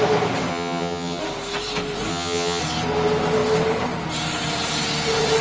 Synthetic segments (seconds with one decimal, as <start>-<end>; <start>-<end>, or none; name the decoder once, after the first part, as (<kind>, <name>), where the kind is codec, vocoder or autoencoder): 0.5-1.2 (vocoder, HiFi-GAN); 2.1-2.6